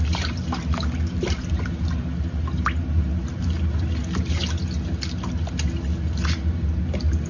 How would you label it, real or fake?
real